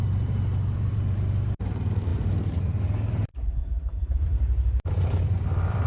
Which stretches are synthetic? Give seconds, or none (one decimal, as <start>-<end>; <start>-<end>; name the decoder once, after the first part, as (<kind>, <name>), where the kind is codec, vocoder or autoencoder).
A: 0.0-3.3 (vocoder, BigVGAN v2); 3.9-5.9